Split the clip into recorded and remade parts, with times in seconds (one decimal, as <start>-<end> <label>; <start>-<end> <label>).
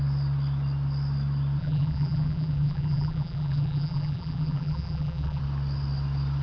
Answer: 0.0-1.6 recorded; 1.6-5.4 remade; 5.4-6.4 recorded